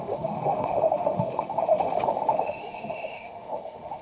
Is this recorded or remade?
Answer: remade